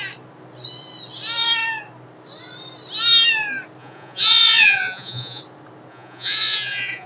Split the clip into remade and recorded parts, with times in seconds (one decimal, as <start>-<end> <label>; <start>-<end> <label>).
0.0-3.8 recorded; 3.8-5.4 remade; 5.4-5.9 recorded; 5.9-7.1 remade